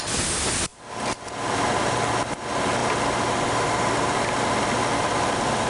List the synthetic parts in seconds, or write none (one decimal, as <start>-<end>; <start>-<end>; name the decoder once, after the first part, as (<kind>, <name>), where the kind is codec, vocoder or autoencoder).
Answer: 0.7-2.1 (vocoder, BigVGAN v2); 2.8-5.7